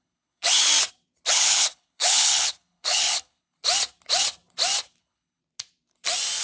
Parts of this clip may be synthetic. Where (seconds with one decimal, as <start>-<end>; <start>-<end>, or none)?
0.0-0.7; 1.3-3.6; 5.0-5.4